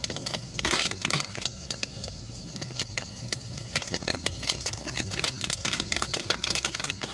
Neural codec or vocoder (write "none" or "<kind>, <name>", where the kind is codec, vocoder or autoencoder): codec, SNAC